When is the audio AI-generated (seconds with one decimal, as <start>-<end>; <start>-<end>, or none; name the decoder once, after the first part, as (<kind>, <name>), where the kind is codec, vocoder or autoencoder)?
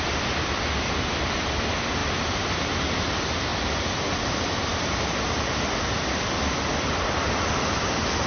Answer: 2.0-2.8 (vocoder, BigVGAN v2); 3.5-4.3